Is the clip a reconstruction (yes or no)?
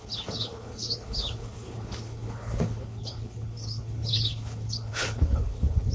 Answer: yes